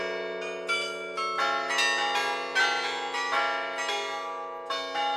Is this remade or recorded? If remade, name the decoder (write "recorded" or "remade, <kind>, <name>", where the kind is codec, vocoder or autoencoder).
recorded